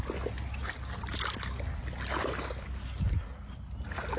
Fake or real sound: real